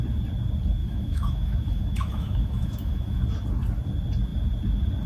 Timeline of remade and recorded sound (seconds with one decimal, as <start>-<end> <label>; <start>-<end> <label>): 0.0-0.8 recorded; 0.8-3.2 remade; 3.2-5.1 recorded